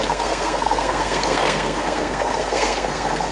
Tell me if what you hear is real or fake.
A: fake